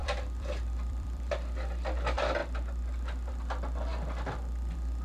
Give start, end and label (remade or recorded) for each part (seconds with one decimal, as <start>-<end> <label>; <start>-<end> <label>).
0.0-1.3 remade; 1.3-5.0 recorded